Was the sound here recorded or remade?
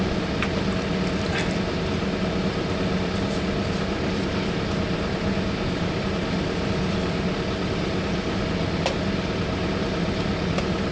recorded